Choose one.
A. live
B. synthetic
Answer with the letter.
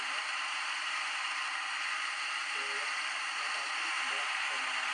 A